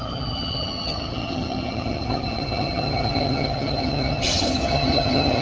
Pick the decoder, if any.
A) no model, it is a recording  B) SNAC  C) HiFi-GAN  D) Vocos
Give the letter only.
C